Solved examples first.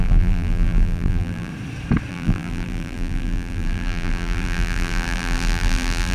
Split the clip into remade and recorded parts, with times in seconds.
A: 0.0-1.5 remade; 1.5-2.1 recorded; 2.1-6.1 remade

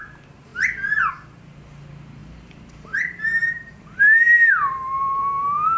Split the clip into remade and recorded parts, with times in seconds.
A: 0.0-2.2 recorded; 2.2-5.8 remade

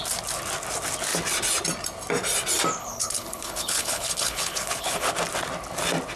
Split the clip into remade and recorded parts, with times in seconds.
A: 0.0-2.8 recorded; 2.8-5.1 remade; 5.1-6.2 recorded

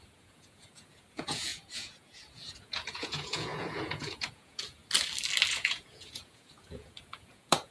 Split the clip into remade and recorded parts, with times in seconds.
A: 0.0-4.8 remade; 4.8-5.5 recorded; 5.5-7.7 remade

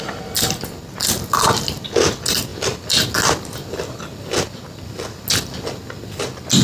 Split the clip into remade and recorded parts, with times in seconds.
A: 0.0-6.6 recorded

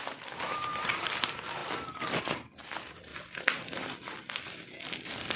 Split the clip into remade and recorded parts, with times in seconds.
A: 0.0-1.6 remade; 1.6-2.2 recorded; 2.2-3.1 remade; 3.1-5.4 recorded

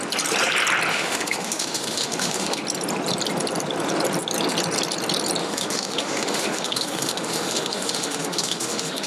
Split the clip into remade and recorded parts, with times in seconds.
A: 0.0-0.9 recorded; 0.9-2.6 remade; 2.6-5.4 recorded; 5.4-9.1 remade

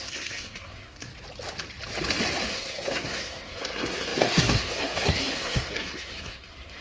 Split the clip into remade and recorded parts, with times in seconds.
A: 0.0-1.1 remade; 1.1-2.5 recorded; 2.5-6.8 remade